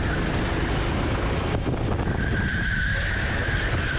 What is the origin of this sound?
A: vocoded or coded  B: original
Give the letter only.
B